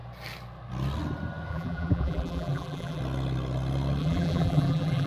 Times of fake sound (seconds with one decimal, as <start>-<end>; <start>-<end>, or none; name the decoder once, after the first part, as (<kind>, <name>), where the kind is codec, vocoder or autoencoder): 1.5-3.0 (vocoder, BigVGAN v2); 4.0-5.1